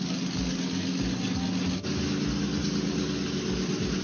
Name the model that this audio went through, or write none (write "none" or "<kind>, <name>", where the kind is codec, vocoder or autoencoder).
none